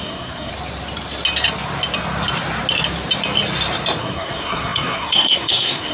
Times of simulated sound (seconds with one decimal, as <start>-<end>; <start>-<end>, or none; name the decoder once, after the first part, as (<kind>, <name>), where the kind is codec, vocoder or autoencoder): 0.0-0.5 (codec, SNAC); 4.0-5.9